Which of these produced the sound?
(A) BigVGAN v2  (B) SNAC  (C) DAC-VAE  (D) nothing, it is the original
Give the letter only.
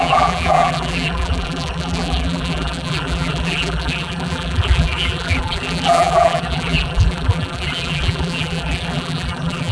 A